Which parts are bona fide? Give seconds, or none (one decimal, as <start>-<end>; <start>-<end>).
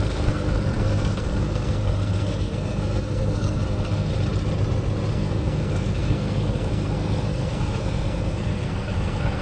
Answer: 4.1-5.1